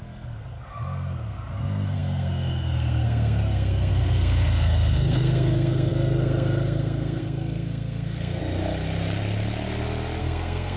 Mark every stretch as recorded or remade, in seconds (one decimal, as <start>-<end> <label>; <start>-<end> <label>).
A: 0.0-8.4 remade; 8.4-10.2 recorded; 10.2-10.8 remade